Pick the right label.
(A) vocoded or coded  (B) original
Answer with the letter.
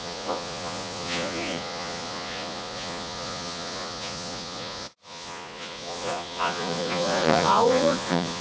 A